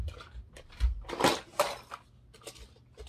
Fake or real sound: real